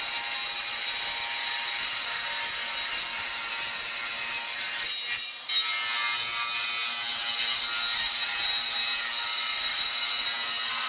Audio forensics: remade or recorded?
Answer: recorded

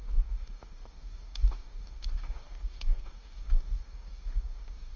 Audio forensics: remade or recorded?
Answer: remade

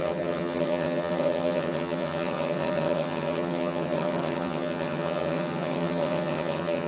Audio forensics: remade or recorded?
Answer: remade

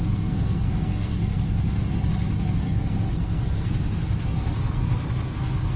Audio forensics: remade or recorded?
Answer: remade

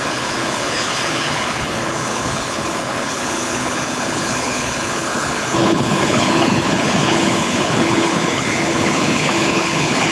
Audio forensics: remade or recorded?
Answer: remade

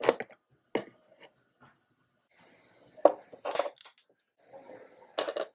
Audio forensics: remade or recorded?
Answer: recorded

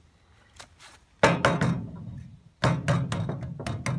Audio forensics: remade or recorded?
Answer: recorded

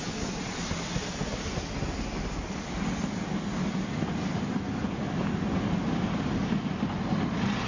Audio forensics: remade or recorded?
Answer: recorded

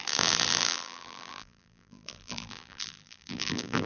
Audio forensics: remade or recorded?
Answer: remade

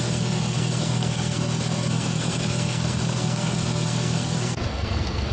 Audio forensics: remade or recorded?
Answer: remade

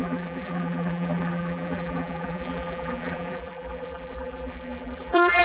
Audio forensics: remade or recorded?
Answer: remade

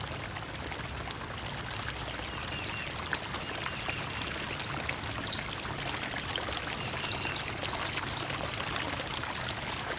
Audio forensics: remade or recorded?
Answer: recorded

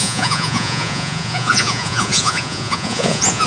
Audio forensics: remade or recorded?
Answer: remade